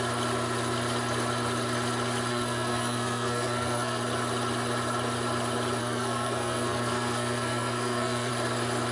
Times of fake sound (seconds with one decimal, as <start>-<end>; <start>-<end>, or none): 2.3-4.0; 5.8-8.3